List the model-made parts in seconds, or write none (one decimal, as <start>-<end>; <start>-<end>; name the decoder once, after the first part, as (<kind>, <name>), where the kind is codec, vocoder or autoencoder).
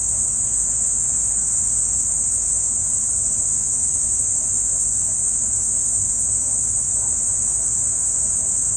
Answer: 0.0-2.8 (autoencoder, DAC-VAE); 3.4-8.8